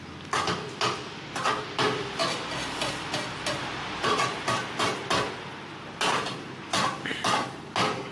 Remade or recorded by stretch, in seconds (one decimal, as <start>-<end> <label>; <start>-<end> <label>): 0.0-8.1 recorded